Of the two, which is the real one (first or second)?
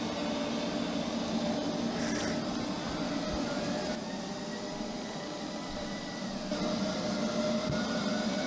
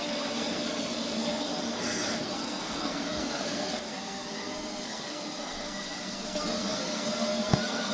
first